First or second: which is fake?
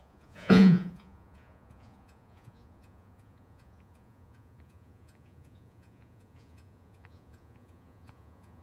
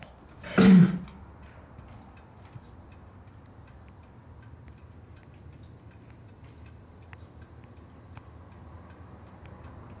first